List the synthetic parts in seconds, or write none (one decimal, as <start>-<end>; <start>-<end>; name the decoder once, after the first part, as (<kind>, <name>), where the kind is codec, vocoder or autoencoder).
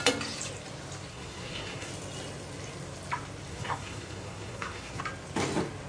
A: 1.1-1.9 (codec, SNAC); 3.5-5.0